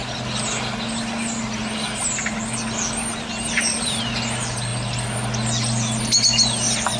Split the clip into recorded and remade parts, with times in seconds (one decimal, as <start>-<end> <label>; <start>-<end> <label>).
0.0-3.1 recorded; 3.1-4.0 remade; 4.0-7.0 recorded